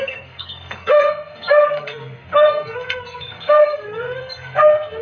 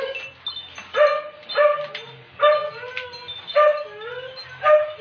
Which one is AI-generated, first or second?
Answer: first